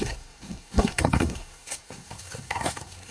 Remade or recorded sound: remade